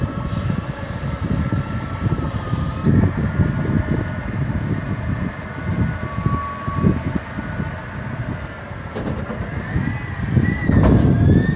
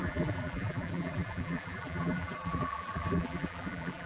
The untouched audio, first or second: first